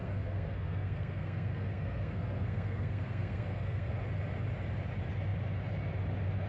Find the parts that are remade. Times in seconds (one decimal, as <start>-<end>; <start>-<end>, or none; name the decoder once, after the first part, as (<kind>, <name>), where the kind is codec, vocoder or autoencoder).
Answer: 0.0-3.9 (codec, SNAC)